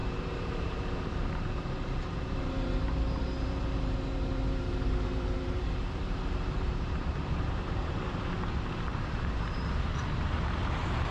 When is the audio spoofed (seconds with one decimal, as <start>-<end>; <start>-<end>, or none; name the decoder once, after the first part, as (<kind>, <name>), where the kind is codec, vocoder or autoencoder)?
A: 0.0-11.1 (vocoder, BigVGAN v2)